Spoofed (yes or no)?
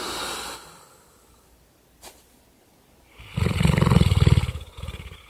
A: no